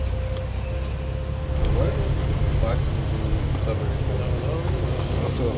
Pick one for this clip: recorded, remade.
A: recorded